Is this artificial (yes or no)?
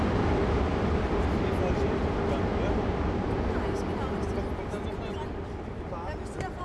no